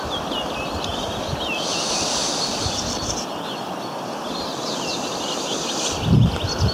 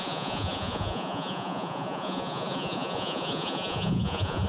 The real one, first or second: first